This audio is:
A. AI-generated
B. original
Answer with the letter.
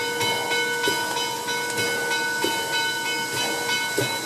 B